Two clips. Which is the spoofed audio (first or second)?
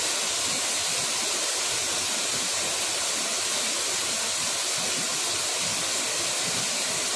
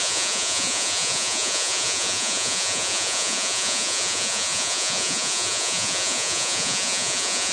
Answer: second